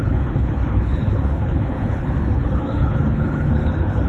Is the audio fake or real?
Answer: fake